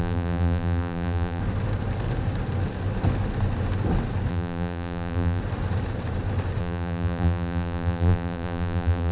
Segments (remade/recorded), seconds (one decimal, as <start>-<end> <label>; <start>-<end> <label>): 0.0-1.4 remade; 1.4-4.3 recorded; 4.3-5.4 remade; 5.4-6.6 recorded; 6.6-9.1 remade